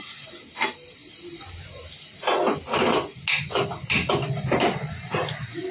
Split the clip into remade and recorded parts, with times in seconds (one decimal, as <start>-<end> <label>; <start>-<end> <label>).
0.0-5.7 recorded